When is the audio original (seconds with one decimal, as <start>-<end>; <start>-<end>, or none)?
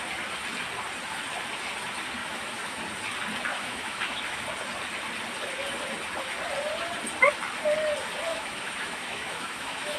0.0-2.2; 2.8-3.5; 4.4-8.3